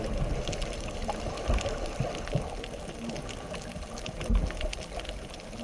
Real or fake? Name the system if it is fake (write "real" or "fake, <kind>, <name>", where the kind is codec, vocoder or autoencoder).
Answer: real